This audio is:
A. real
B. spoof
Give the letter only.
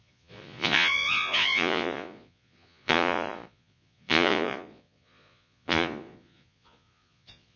B